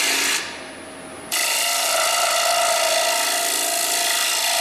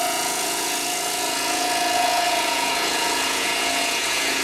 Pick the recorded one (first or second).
first